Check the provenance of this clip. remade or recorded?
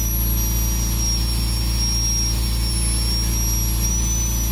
recorded